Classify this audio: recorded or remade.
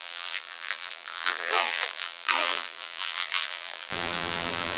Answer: remade